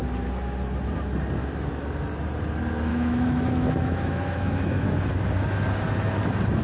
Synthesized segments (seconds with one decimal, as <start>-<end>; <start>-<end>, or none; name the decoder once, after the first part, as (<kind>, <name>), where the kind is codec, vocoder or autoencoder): 2.9-5.1 (autoencoder, DAC-VAE)